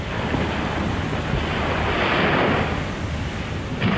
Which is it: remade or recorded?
recorded